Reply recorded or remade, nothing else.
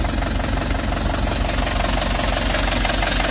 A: recorded